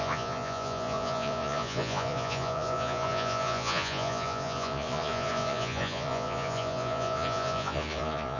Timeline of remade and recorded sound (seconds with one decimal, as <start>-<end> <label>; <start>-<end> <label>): 0.0-8.4 remade

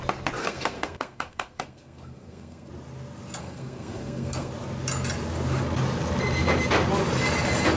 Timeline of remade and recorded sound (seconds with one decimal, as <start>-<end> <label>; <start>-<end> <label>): 0.0-0.4 recorded; 0.4-2.7 remade; 2.7-3.4 recorded; 3.4-4.5 remade; 4.5-7.8 recorded

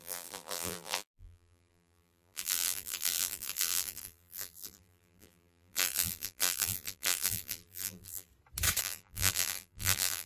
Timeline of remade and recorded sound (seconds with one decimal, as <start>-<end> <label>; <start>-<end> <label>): 0.0-8.3 remade; 8.3-8.8 recorded; 8.8-10.3 remade

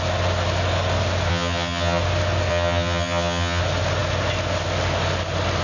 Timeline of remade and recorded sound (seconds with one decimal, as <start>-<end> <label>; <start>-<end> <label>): 0.0-1.3 recorded; 1.3-2.0 remade; 2.0-2.5 recorded; 2.5-3.6 remade; 3.6-5.6 recorded